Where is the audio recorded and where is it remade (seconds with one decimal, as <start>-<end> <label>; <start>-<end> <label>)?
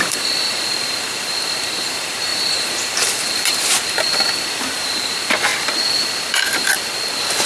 0.0-5.5 remade; 5.5-7.5 recorded